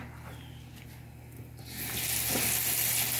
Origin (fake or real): real